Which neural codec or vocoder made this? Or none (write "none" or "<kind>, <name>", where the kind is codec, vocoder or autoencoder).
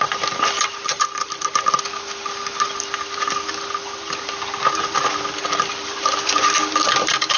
none